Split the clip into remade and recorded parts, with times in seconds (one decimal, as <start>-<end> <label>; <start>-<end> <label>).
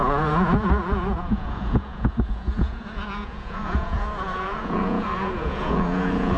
0.0-6.4 remade